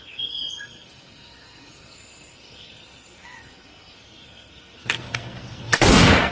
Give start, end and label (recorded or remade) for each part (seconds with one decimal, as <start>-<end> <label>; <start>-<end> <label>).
0.0-6.3 remade